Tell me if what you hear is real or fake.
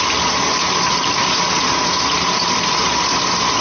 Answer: real